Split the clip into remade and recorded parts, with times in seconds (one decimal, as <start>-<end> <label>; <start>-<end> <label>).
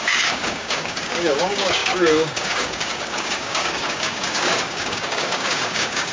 0.0-6.1 remade